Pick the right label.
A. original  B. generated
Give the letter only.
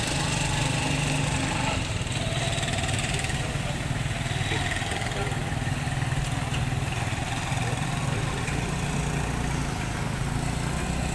A